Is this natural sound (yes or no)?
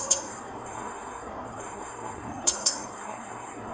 no